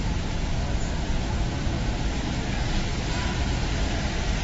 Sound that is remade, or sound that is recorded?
recorded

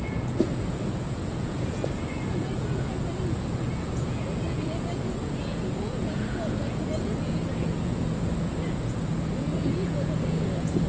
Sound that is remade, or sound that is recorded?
remade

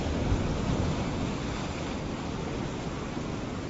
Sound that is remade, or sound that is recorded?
recorded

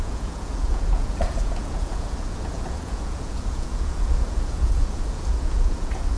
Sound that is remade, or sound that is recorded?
remade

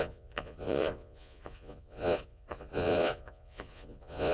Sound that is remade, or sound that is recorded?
remade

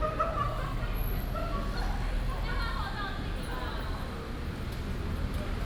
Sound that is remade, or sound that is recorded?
recorded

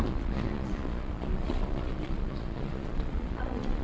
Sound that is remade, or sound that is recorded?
remade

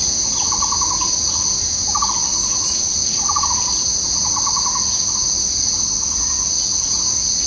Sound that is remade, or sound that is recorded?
recorded